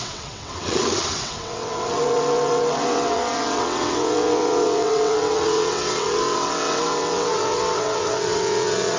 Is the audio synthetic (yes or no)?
yes